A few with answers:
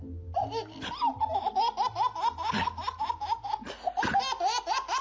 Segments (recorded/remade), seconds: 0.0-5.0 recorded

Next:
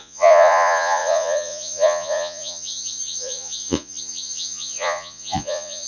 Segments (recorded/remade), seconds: 0.0-5.9 remade